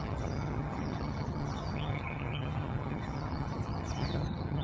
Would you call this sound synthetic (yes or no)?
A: yes